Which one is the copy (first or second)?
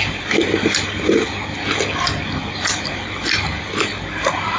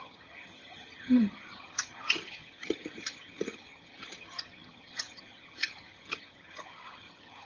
second